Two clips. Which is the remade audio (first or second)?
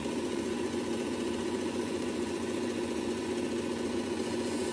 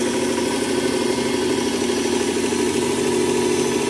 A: first